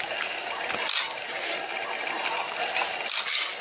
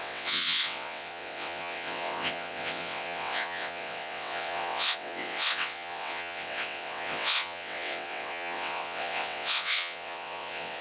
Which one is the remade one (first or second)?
second